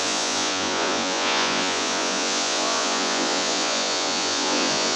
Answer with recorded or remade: remade